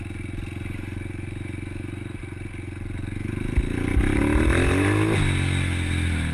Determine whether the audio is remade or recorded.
recorded